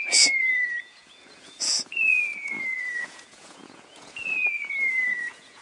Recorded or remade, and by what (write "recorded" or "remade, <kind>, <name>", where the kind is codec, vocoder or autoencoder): remade, vocoder, Vocos